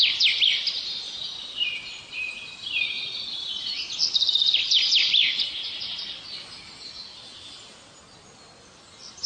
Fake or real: real